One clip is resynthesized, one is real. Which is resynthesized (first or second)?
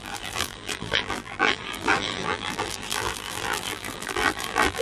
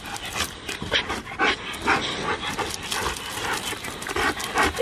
first